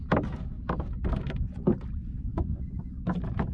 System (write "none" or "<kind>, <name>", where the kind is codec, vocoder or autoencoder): none